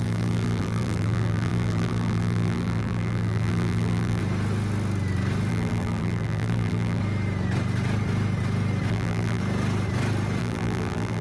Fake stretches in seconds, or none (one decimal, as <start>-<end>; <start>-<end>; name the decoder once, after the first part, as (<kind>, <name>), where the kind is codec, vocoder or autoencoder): 0.0-4.2 (vocoder, BigVGAN v2); 5.5-7.0; 8.9-9.4; 10.4-11.2